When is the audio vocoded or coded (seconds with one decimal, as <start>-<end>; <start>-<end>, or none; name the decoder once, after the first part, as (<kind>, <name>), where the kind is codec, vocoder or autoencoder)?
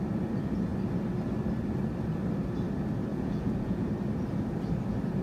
3.1-3.9 (vocoder, Vocos)